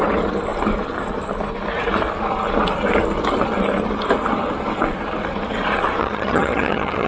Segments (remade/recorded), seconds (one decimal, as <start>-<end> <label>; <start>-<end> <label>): 0.0-6.0 recorded; 6.0-7.1 remade